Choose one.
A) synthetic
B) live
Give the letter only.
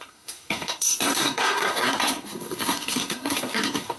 A